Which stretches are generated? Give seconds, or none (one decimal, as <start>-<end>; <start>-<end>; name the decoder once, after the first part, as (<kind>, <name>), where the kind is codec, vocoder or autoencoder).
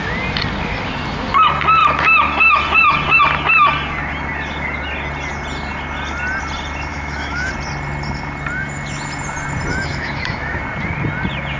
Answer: 6.9-7.5 (autoencoder, DAC-VAE); 9.7-10.6